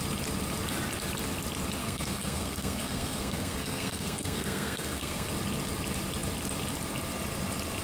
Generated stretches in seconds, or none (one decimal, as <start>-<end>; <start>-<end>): 1.8-5.3